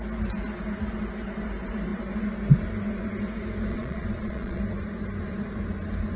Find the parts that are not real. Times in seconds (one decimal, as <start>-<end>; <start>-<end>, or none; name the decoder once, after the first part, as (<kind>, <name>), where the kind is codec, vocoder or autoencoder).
3.7-4.6 (vocoder, Vocos)